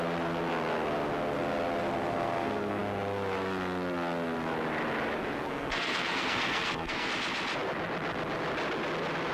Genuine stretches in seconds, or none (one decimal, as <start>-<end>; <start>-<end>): 0.0-2.1; 2.8-5.4; 7.1-9.3